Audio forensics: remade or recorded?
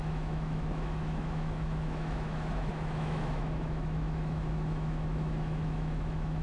remade